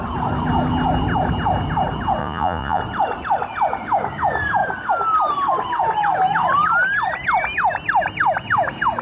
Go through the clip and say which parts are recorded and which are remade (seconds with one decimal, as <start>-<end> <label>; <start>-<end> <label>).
0.0-2.2 recorded; 2.2-2.8 remade; 2.8-9.0 recorded